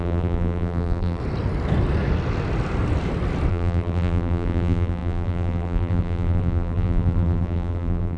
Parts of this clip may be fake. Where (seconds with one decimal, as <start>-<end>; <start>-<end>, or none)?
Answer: 0.0-1.2; 3.5-8.2